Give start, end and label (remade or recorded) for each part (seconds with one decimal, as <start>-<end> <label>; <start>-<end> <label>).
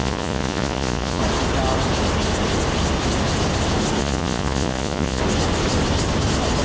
0.0-1.2 remade; 1.2-4.0 recorded; 4.0-5.2 remade; 5.2-6.6 recorded